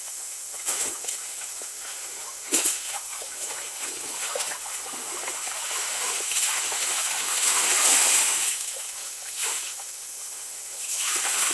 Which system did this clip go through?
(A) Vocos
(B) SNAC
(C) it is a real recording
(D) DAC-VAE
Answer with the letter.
D